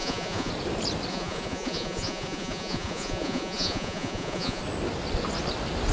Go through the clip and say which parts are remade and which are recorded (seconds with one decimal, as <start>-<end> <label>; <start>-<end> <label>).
0.0-0.5 remade; 0.5-1.1 recorded; 1.1-4.6 remade; 4.6-5.9 recorded